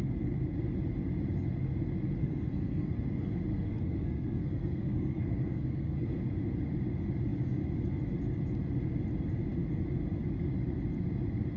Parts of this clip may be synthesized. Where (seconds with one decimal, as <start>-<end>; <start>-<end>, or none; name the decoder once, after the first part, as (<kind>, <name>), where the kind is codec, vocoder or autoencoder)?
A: 2.2-2.9 (codec, SNAC); 3.5-6.2